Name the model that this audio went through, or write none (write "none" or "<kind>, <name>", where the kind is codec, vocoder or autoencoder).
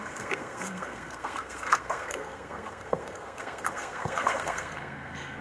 codec, SNAC